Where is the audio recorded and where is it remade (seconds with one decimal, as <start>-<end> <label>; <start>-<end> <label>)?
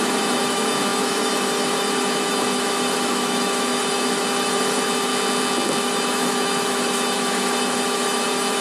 0.0-5.1 remade; 5.1-5.8 recorded; 5.8-8.6 remade